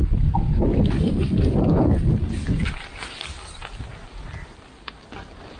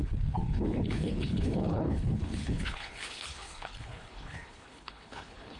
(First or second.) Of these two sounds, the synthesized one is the second